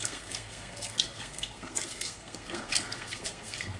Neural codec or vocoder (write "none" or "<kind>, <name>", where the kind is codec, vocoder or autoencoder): codec, SNAC